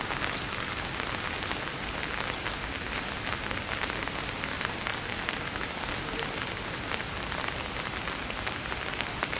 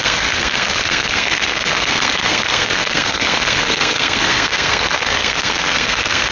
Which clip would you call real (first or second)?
first